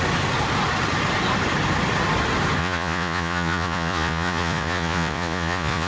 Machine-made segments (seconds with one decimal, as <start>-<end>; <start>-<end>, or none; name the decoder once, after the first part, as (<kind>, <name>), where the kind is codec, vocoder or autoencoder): 2.6-5.9 (vocoder, Vocos)